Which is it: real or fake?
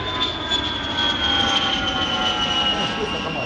real